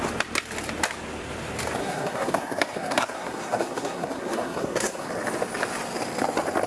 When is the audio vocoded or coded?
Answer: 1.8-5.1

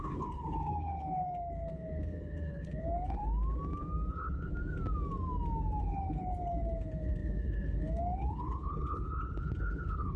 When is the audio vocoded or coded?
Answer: 0.0-3.2; 4.1-4.5; 5.8-10.2

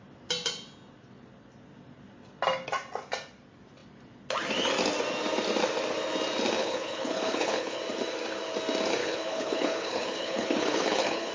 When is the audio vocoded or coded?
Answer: 6.6-7.8; 9.0-11.3

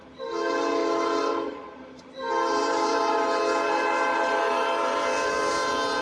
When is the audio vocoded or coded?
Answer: none

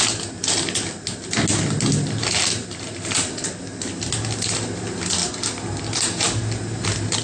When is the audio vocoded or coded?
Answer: none